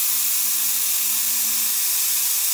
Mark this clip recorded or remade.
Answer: recorded